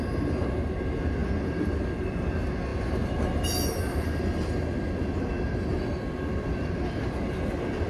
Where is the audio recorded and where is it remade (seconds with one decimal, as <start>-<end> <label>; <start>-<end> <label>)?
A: 0.0-1.2 recorded; 1.2-2.2 remade; 2.2-7.9 recorded